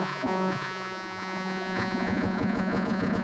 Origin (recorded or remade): remade